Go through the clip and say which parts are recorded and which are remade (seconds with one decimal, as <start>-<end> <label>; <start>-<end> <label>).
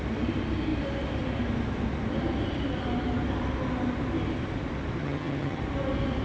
0.0-5.0 recorded; 5.0-5.6 remade; 5.6-6.2 recorded